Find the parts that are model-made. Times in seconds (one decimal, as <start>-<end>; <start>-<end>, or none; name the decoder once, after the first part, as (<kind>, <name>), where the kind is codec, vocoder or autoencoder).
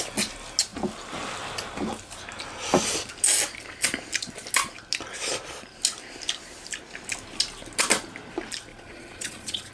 8.7-9.7 (vocoder, Vocos)